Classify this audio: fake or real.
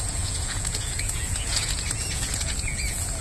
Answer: fake